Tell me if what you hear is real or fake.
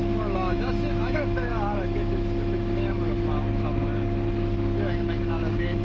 fake